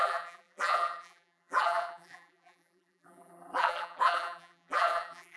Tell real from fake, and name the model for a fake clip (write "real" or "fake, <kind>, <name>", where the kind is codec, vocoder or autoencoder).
fake, vocoder, BigVGAN v2